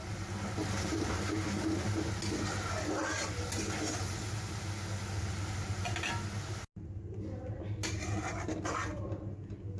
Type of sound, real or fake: real